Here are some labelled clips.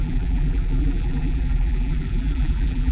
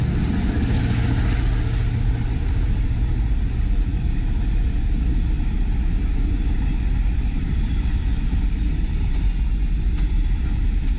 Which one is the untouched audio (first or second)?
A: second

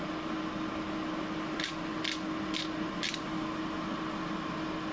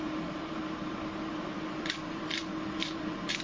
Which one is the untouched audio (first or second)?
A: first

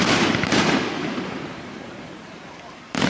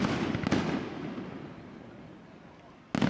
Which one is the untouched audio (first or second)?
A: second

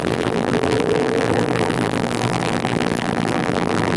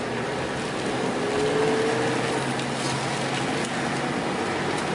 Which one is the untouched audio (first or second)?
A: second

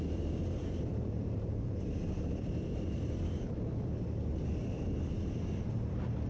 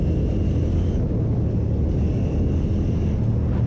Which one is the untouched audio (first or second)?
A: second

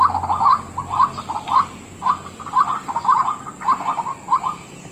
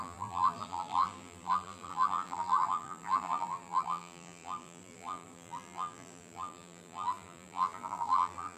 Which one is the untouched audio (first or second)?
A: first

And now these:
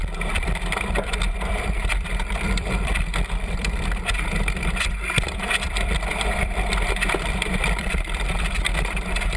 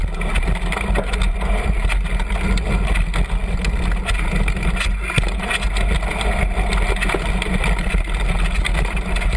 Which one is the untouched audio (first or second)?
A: second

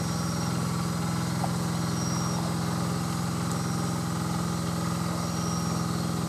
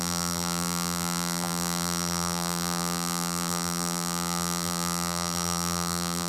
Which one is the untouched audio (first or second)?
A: first